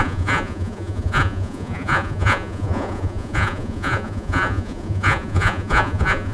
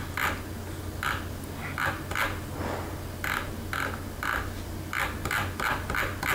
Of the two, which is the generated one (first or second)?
first